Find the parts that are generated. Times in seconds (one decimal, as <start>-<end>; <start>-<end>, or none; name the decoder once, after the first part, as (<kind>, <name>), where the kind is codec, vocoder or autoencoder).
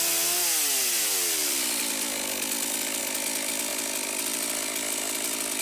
0.8-3.0 (vocoder, BigVGAN v2); 3.7-5.6